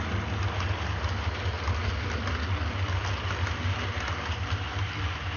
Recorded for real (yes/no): yes